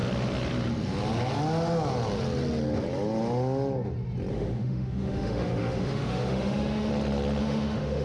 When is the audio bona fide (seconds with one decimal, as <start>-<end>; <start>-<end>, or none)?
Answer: 0.0-4.3; 6.9-7.4